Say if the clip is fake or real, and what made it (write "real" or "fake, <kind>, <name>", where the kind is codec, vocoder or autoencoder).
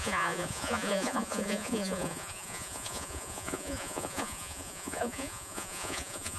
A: fake, vocoder, Vocos